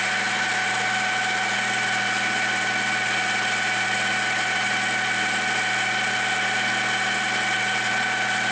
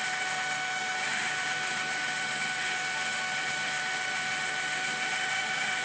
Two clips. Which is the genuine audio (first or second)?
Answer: first